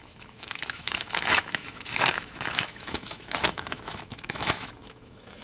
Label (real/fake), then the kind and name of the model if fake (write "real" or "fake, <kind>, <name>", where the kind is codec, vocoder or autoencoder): fake, autoencoder, DAC-VAE